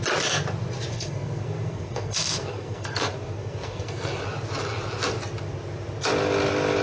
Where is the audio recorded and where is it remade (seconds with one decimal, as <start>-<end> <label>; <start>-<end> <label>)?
0.0-0.9 recorded; 0.9-4.2 remade; 4.2-6.8 recorded